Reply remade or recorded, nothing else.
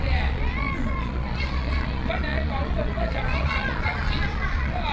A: remade